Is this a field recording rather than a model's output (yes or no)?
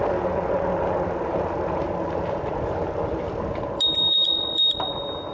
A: yes